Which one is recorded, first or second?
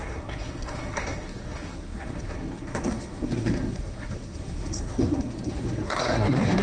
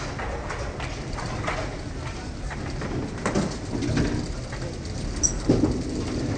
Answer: second